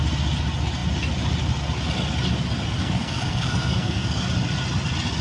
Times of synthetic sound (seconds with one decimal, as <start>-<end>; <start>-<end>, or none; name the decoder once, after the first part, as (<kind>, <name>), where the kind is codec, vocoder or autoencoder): 2.8-4.2 (codec, SNAC)